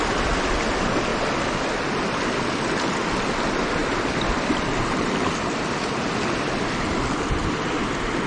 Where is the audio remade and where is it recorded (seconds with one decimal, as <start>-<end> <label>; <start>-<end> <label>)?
0.0-1.1 recorded; 1.1-1.6 remade; 1.6-3.8 recorded; 3.8-5.0 remade; 5.0-8.3 recorded